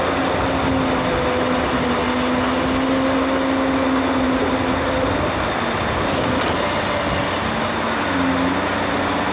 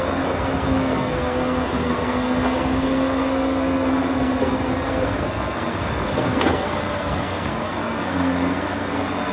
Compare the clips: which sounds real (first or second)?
first